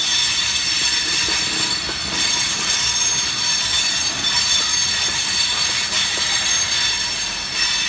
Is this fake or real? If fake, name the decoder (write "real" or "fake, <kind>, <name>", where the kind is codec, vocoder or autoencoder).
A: real